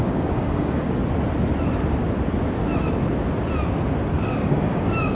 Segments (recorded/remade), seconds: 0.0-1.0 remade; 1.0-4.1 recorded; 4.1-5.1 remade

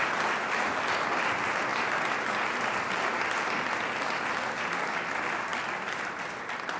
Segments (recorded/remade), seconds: 0.0-6.8 recorded

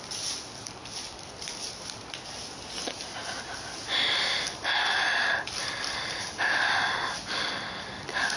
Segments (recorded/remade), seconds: 0.0-8.4 recorded

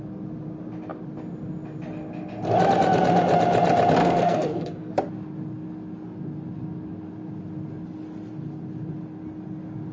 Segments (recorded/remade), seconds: 0.0-4.0 recorded; 4.0-4.9 remade; 4.9-9.9 recorded

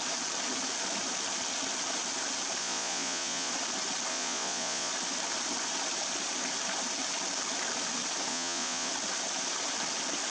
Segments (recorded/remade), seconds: 0.0-2.6 recorded; 2.6-3.5 remade; 3.5-4.1 recorded; 4.1-4.9 remade; 4.9-8.3 recorded; 8.3-8.9 remade; 8.9-10.3 recorded

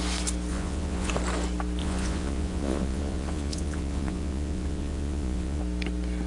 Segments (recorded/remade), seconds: 0.0-0.5 recorded; 0.5-1.1 remade; 1.1-1.8 recorded; 1.8-5.6 remade; 5.6-6.3 recorded

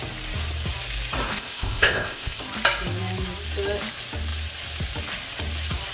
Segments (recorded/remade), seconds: 0.0-1.3 recorded; 1.3-2.4 remade; 2.4-5.9 recorded